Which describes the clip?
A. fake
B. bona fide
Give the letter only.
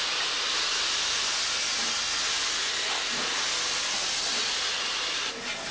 B